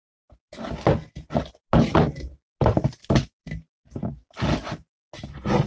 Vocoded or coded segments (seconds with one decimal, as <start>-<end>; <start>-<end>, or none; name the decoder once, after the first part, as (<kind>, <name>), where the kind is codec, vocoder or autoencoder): none